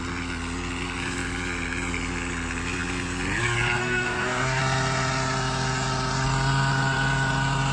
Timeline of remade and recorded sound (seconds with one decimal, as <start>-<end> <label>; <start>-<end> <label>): 0.0-3.8 recorded; 3.8-4.6 remade; 4.6-7.7 recorded